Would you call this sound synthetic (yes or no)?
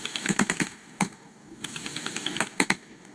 yes